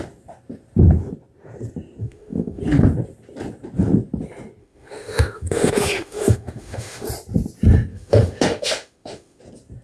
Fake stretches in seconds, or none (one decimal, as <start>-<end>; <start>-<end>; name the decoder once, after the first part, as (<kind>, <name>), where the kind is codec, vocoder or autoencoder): 2.0-2.6 (autoencoder, DAC-VAE); 4.6-7.1; 7.9-9.4